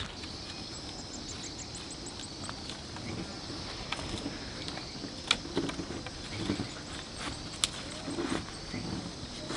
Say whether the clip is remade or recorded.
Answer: recorded